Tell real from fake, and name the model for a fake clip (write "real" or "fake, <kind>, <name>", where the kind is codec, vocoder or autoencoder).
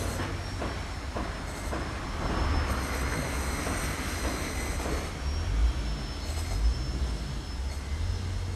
real